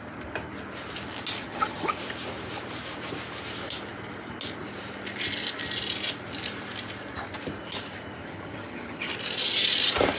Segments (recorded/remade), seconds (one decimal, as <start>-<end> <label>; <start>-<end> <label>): 0.0-1.4 recorded; 1.4-2.0 remade; 2.0-8.2 recorded; 8.2-9.1 remade; 9.1-10.2 recorded